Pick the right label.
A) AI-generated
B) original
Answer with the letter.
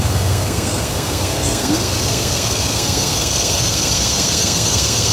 A